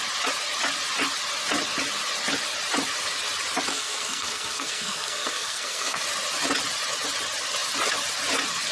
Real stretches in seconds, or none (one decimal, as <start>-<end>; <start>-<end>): 0.0-3.7; 6.0-8.7